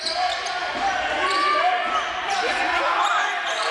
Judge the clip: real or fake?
real